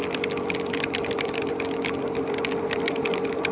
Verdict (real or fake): real